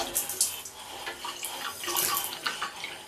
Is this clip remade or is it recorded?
recorded